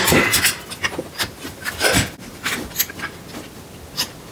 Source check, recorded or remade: recorded